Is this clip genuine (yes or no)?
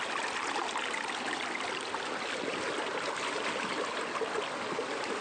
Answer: yes